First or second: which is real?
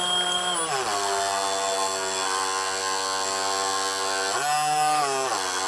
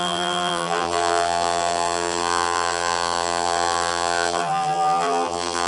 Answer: first